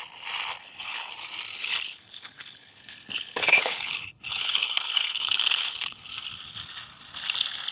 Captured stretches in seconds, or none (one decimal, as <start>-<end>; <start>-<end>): 0.0-0.6; 1.1-1.5; 6.1-7.7